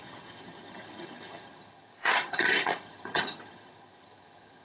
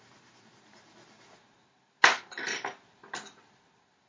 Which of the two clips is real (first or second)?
second